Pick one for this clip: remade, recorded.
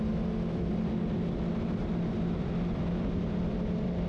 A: recorded